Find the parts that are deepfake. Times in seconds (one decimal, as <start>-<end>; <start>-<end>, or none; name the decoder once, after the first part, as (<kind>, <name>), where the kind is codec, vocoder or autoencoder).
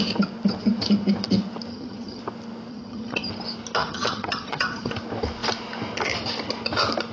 1.7-2.2 (vocoder, HiFi-GAN); 2.7-3.3; 3.8-4.9